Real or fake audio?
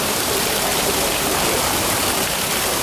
fake